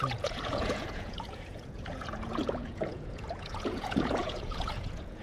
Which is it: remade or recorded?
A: remade